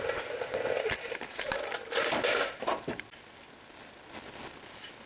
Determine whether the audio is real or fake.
real